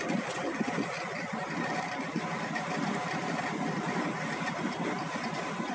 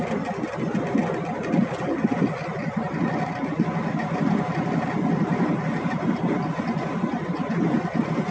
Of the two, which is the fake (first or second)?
first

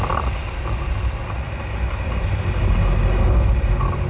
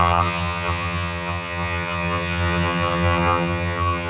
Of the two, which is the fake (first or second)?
second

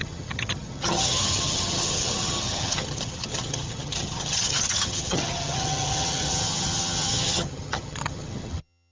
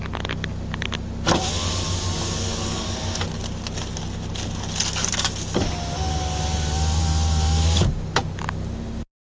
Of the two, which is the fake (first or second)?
first